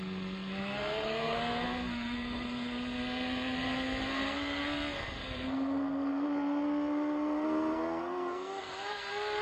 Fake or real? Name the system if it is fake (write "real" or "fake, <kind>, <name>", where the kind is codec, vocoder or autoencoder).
fake, codec, SNAC